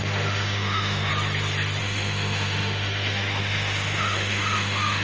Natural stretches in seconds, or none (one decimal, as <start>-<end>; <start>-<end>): 1.1-1.8